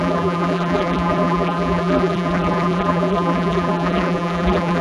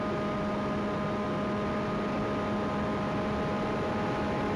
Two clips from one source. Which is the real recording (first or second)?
second